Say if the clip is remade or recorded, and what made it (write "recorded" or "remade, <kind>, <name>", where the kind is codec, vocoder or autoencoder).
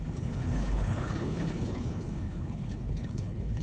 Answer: remade, codec, HILCodec